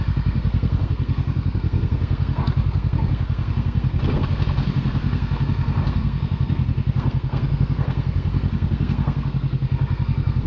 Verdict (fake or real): fake